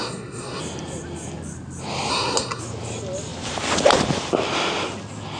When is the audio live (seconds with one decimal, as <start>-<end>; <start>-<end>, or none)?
0.6-2.1; 2.6-5.4

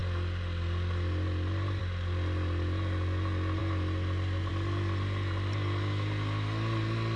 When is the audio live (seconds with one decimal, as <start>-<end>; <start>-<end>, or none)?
0.0-7.2

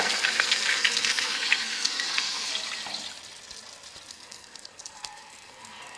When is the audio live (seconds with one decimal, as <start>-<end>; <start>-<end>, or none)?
2.5-4.1

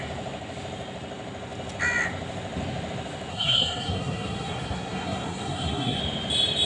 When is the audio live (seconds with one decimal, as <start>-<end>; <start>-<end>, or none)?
0.0-3.3; 6.0-6.7

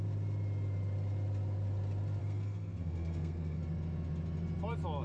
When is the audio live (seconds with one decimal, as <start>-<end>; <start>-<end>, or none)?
0.0-2.2; 3.6-5.0

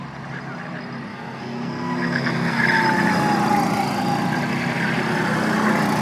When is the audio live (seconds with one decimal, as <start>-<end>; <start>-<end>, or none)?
0.0-1.1; 2.6-6.0

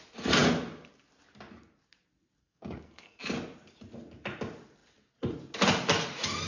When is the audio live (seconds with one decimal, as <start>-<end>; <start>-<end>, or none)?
0.0-2.4; 3.2-6.5